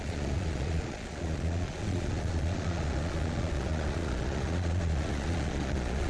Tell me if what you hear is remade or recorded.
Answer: remade